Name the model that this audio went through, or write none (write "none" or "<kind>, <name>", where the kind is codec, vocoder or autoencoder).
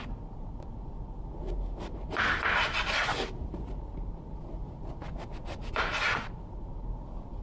none